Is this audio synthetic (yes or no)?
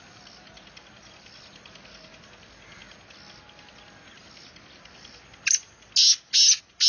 no